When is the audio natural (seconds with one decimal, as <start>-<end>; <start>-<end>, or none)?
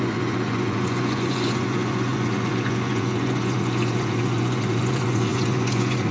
none